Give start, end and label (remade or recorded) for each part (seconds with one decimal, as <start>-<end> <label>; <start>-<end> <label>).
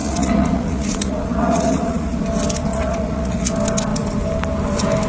0.0-2.2 remade; 2.2-2.7 recorded; 2.7-3.5 remade; 3.5-5.1 recorded